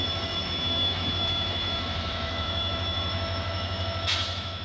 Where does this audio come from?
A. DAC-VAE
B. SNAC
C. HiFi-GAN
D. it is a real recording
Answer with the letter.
A